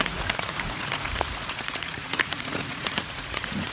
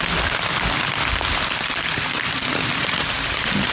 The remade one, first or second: first